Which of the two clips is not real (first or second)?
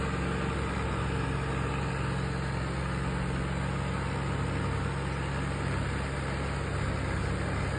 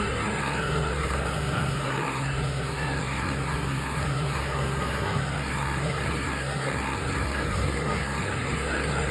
second